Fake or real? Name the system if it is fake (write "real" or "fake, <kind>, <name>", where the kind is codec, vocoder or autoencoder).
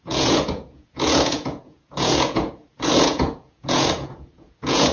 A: fake, vocoder, Vocos